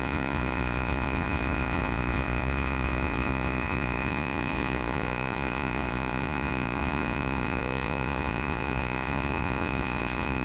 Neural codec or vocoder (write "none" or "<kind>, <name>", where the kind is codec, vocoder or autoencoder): vocoder, Vocos